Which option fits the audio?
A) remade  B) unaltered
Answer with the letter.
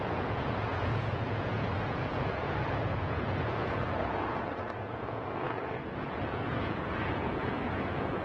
A